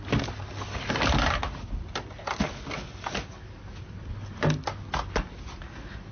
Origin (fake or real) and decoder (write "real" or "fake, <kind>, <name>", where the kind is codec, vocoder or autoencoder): real